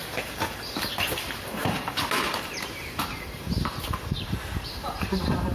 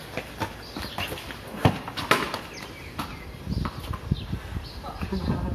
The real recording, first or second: second